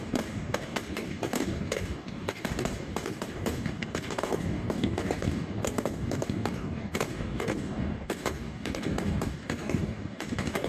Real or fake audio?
fake